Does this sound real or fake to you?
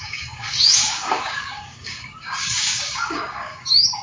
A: fake